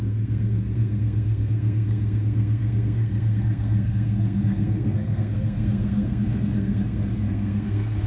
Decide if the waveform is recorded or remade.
remade